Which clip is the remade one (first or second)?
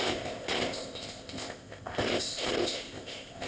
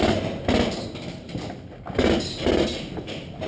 first